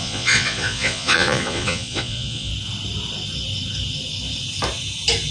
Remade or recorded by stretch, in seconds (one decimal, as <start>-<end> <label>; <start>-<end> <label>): 0.0-2.5 remade; 2.5-5.3 recorded

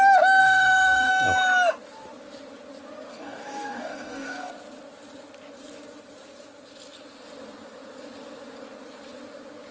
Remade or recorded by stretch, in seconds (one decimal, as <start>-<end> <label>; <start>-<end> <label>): 0.0-0.4 recorded; 0.4-1.1 remade; 1.1-3.1 recorded; 3.1-4.5 remade; 4.5-9.7 recorded

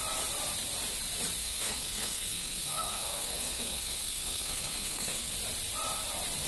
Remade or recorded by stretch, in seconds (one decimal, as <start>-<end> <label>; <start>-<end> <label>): 0.0-1.4 recorded; 1.4-5.3 remade; 5.3-6.5 recorded